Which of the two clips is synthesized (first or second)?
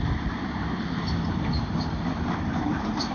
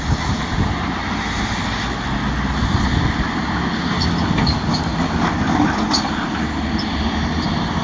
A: first